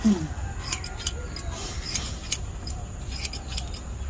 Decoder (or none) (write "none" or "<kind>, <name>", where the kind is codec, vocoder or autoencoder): none